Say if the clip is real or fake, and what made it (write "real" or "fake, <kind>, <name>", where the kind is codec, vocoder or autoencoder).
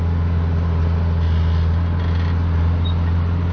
real